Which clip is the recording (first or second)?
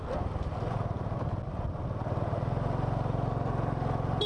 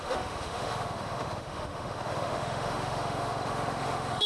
first